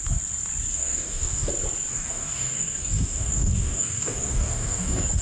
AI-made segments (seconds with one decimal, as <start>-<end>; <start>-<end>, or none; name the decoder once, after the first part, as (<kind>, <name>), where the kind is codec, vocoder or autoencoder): 0.7-1.5 (codec, DAC); 1.9-5.2